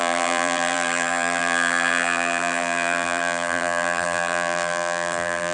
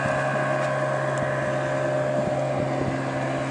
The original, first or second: second